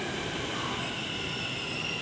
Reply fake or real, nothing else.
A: real